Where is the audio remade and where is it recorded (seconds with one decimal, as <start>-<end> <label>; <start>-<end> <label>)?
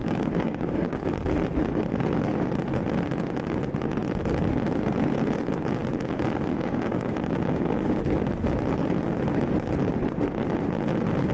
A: 0.0-1.2 remade; 1.2-6.5 recorded; 6.5-8.0 remade; 8.0-11.3 recorded